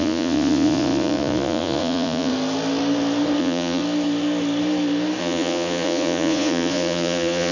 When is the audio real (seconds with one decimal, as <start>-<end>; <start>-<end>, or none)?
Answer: 2.3-3.4; 3.8-5.2